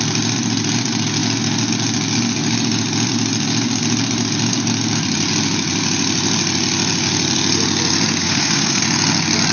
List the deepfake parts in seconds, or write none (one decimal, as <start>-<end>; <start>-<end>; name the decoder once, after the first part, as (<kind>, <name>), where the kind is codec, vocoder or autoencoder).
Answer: 8.2-8.8 (codec, SNAC)